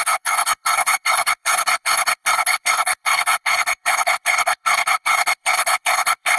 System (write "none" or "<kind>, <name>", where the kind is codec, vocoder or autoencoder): codec, HILCodec